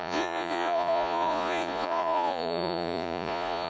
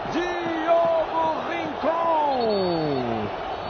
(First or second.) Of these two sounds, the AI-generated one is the first